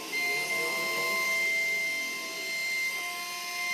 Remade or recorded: recorded